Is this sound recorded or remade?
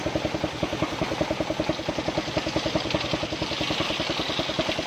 recorded